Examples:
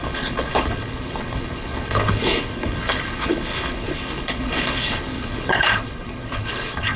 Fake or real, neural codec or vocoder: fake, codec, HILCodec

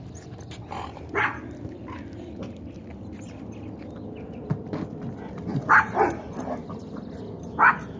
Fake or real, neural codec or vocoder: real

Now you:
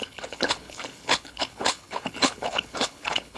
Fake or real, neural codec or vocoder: fake, codec, HILCodec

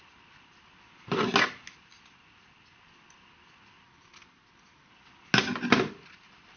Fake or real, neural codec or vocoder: real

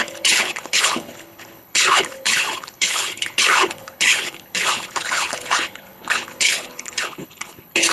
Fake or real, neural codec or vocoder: fake, codec, HILCodec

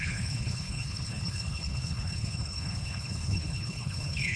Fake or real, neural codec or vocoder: fake, codec, HILCodec